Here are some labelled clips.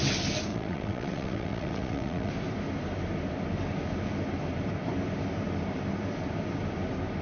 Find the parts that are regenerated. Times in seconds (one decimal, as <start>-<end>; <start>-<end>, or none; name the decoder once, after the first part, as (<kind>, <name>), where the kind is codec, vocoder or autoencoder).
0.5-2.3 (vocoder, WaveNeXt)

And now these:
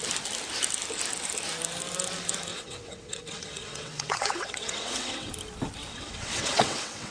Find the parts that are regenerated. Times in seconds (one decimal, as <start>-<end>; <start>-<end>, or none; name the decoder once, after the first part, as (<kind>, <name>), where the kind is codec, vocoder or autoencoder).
2.5-5.3 (vocoder, WaveNeXt); 5.9-7.1

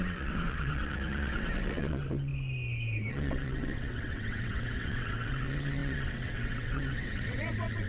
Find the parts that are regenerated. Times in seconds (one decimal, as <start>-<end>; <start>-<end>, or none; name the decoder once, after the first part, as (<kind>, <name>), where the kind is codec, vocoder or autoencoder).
0.0-2.3 (vocoder, WaveNeXt); 3.1-7.9

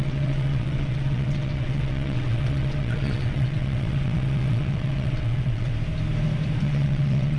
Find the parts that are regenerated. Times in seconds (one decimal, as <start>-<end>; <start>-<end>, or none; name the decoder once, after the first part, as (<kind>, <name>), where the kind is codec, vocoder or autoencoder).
0.0-5.7 (vocoder, WaveNeXt); 6.6-7.4

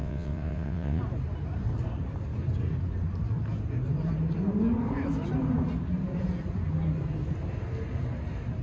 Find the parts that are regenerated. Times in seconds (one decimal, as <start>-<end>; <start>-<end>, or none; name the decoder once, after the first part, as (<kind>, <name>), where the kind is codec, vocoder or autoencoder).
0.0-1.0 (vocoder, WaveNeXt)

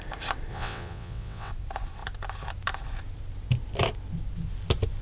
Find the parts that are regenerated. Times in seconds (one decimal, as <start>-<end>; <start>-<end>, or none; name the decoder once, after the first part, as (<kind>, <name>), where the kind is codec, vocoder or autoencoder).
0.5-1.5 (vocoder, WaveNeXt)